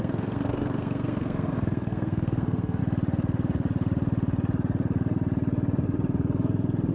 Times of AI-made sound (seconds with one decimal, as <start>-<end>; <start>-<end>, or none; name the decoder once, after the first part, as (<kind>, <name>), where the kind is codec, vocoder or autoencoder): 0.0-2.8 (codec, SNAC)